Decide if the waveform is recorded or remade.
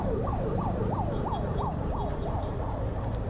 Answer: recorded